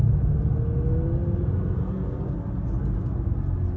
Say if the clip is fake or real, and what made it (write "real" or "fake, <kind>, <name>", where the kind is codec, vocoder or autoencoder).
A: real